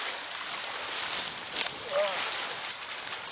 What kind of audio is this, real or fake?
real